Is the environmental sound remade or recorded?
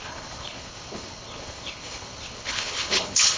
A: remade